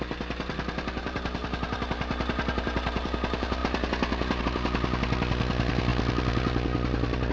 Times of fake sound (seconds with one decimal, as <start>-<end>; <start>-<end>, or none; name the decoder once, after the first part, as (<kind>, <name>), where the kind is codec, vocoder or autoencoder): none